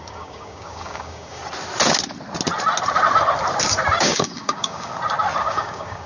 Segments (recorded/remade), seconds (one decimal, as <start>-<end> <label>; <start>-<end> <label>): 0.0-1.4 remade; 1.4-4.0 recorded; 4.0-4.9 remade; 4.9-5.4 recorded; 5.4-6.1 remade

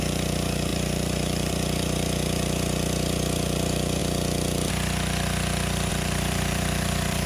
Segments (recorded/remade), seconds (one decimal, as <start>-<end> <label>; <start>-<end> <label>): 0.0-4.0 remade; 4.0-5.9 recorded; 5.9-7.3 remade